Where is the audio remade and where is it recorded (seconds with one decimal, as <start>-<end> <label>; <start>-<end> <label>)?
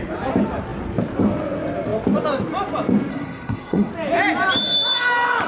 0.0-3.1 recorded; 3.1-3.9 remade; 3.9-5.5 recorded